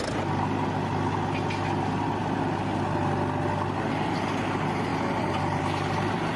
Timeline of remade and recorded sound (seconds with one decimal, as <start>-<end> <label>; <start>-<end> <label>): 0.0-6.4 recorded

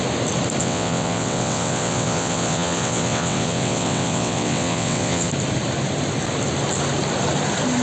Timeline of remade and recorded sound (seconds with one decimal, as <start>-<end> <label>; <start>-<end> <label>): 0.0-0.6 recorded; 0.6-5.3 remade; 5.3-7.8 recorded

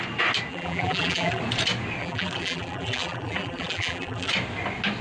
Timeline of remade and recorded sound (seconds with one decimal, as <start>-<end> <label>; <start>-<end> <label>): 0.0-0.5 recorded; 0.5-1.4 remade; 1.4-2.0 recorded; 2.0-4.3 remade; 4.3-5.0 recorded

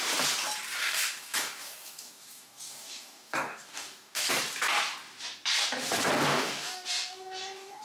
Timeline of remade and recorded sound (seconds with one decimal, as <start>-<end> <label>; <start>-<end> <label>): 0.0-0.8 recorded; 0.8-4.3 remade; 4.3-6.3 recorded; 6.3-7.8 remade